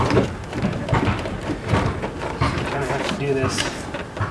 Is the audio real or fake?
real